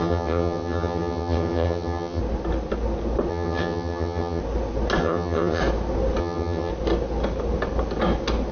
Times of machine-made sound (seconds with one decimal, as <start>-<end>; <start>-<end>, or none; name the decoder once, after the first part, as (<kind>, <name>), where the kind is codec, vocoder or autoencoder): 0.0-2.2 (vocoder, HiFi-GAN); 3.3-4.4; 5.0-5.6; 6.2-6.7